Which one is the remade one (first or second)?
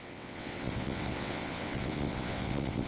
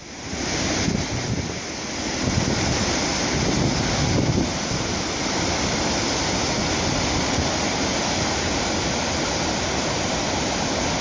first